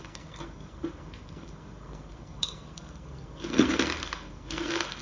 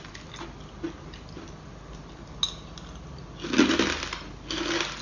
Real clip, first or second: second